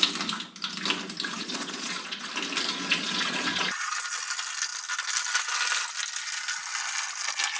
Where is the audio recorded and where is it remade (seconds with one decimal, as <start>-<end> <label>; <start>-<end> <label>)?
0.0-1.3 recorded; 1.3-2.3 remade; 2.3-2.7 recorded; 2.7-3.9 remade; 3.9-7.6 recorded